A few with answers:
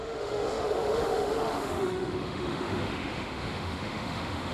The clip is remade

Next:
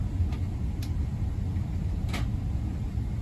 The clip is recorded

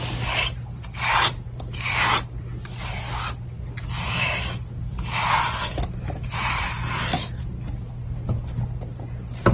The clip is recorded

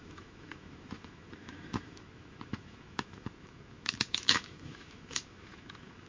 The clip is remade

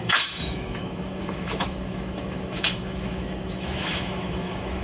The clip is remade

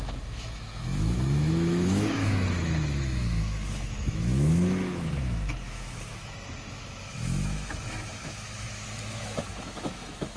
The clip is remade